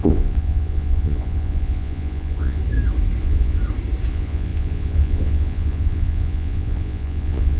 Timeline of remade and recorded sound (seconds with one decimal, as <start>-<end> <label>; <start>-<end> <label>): 0.0-2.6 remade; 2.6-3.2 recorded; 3.2-3.6 remade; 3.6-4.1 recorded; 4.1-7.6 remade